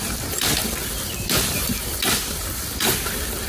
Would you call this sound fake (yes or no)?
no